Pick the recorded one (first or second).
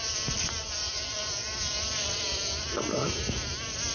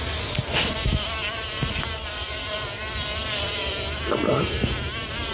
second